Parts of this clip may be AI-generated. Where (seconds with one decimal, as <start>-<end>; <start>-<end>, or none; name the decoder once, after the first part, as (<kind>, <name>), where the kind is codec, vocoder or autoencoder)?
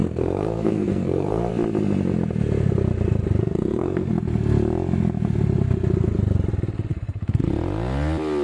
0.0-1.5 (codec, SNAC); 3.4-4.1; 6.9-7.5